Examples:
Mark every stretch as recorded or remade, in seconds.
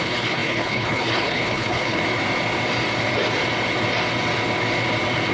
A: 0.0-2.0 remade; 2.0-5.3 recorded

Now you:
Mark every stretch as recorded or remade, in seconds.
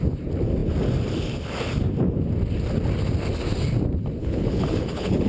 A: 0.0-4.2 recorded; 4.2-5.3 remade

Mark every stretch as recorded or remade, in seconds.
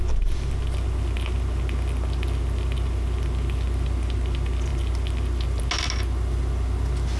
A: 0.0-7.2 recorded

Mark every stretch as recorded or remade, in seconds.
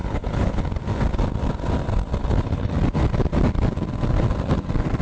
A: 0.0-0.6 remade; 0.6-2.2 recorded; 2.2-2.7 remade; 2.7-5.0 recorded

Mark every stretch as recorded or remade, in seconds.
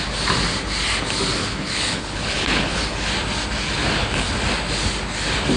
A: 0.0-1.4 recorded; 1.4-2.8 remade; 2.8-5.6 recorded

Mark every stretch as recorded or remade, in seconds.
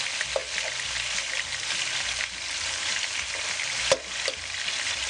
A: 0.0-5.1 recorded